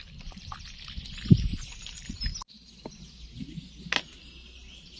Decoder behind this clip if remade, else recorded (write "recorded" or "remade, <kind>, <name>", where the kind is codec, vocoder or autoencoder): recorded